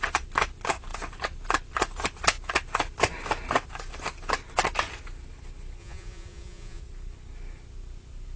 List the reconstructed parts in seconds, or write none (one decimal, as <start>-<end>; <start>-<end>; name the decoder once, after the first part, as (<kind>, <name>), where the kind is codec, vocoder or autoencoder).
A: 5.8-6.8 (vocoder, Vocos)